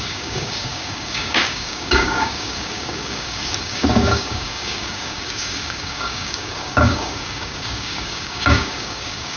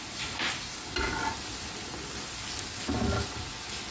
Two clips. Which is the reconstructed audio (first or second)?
first